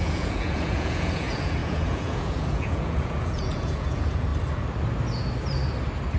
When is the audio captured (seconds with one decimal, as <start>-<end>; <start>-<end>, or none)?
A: 4.3-6.2